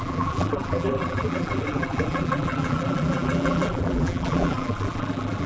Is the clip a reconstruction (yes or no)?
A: yes